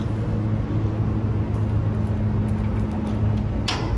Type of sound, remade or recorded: recorded